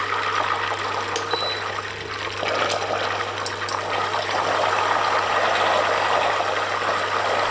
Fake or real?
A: real